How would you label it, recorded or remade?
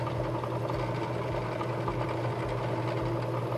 recorded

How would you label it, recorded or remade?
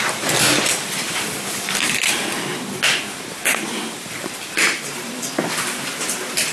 remade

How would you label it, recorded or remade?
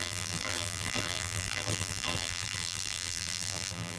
remade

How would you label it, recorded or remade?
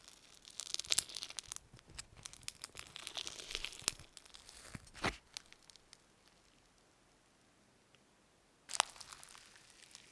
recorded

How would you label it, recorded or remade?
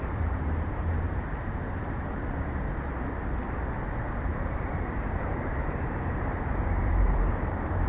remade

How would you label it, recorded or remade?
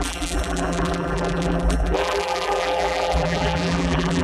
remade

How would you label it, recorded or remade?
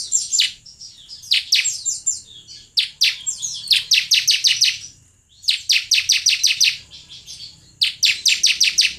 recorded